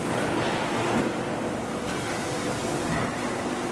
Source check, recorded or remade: recorded